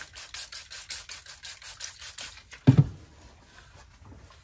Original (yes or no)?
yes